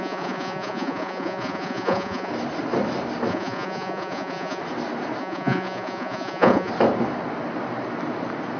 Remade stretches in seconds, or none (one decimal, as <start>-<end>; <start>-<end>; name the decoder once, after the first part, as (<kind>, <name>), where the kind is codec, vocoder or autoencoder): 0.0-2.3 (vocoder, Vocos); 3.3-4.6; 5.2-6.7